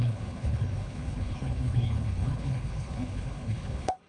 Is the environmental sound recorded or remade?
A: remade